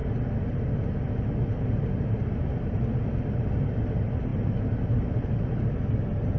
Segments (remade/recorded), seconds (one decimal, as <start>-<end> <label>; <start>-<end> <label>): 0.0-4.3 recorded; 4.3-5.8 remade; 5.8-6.4 recorded